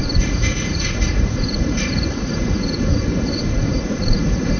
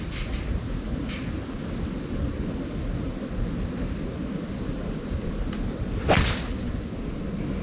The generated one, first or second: first